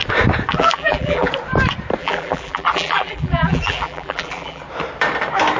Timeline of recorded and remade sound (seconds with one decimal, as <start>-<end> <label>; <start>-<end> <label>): 0.0-0.5 recorded; 0.5-1.3 remade; 1.3-2.0 recorded; 2.0-4.6 remade; 4.6-5.6 recorded